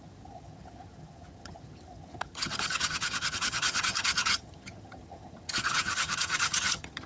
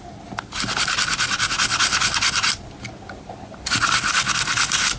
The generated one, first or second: first